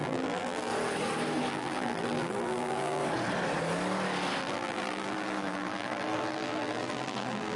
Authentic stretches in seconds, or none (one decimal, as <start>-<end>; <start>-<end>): 0.7-1.5; 3.0-4.4